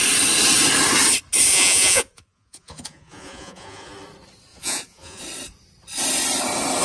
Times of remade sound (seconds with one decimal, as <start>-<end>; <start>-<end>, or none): 1.5-3.9; 4.5-5.2